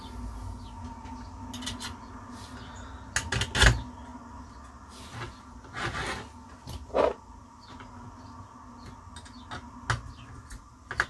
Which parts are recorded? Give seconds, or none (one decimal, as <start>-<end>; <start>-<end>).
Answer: 0.0-11.1